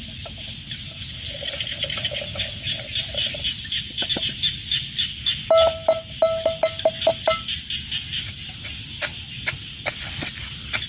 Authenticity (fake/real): real